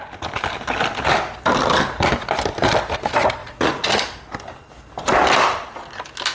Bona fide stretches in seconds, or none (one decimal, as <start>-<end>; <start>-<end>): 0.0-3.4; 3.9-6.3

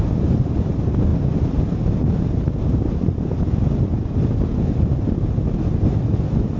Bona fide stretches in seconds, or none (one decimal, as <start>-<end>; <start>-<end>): 0.0-6.6

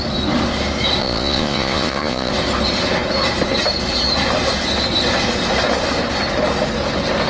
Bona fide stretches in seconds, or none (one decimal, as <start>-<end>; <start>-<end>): 0.0-1.0; 2.3-7.3

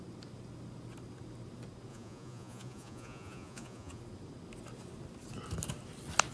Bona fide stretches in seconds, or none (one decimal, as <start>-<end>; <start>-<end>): 0.0-1.9; 4.0-6.3

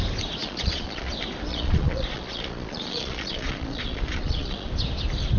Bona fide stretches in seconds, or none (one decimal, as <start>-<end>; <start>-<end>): 0.0-0.4; 1.1-1.5; 4.7-5.4

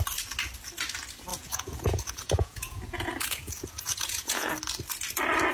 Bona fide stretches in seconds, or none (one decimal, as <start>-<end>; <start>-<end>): 0.0-1.3; 4.5-5.5

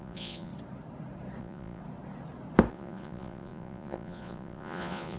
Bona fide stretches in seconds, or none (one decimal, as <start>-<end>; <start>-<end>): 0.5-1.4; 1.8-2.7